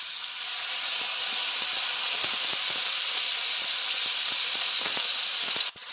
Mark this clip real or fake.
fake